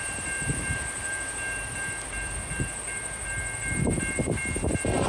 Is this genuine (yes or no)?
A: yes